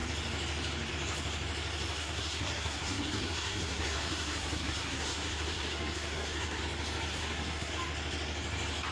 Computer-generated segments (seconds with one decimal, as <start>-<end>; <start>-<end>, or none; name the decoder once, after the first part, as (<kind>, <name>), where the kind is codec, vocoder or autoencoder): 2.0-6.6 (codec, SNAC); 7.1-7.7